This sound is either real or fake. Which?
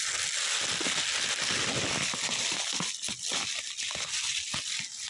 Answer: real